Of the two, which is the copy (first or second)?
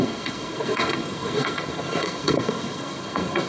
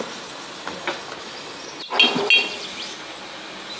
first